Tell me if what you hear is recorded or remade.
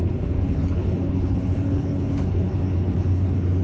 remade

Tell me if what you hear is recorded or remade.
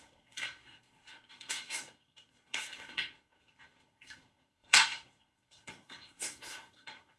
remade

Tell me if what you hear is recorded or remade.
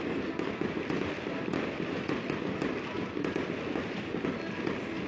recorded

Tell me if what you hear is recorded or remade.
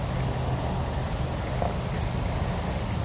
recorded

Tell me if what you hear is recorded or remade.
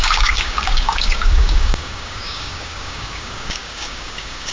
remade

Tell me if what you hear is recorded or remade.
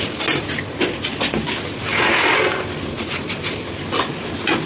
recorded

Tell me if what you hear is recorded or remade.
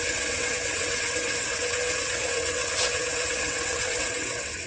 remade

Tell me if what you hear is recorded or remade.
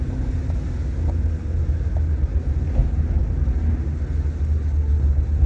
recorded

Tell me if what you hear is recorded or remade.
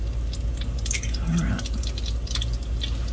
recorded